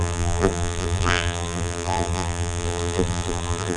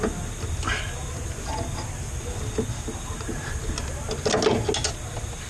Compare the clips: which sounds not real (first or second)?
first